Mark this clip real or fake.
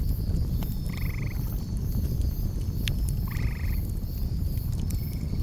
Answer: real